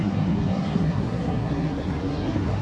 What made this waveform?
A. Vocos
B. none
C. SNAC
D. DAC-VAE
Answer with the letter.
C